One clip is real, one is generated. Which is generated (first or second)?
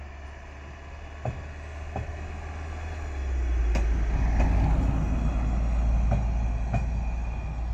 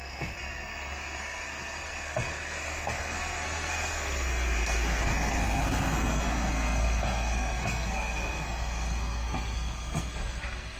second